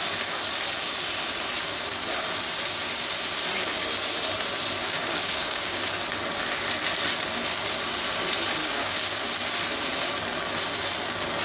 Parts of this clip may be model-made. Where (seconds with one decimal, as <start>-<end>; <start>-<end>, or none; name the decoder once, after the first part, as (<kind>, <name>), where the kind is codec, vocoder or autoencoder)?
4.8-5.8 (codec, DAC); 8.6-9.2